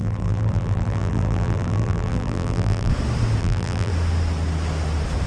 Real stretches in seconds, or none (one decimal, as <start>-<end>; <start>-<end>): 2.9-3.4; 3.9-5.3